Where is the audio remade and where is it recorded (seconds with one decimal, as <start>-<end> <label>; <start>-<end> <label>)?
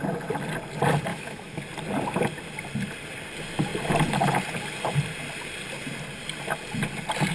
0.0-1.1 recorded; 1.1-1.6 remade; 1.6-7.3 recorded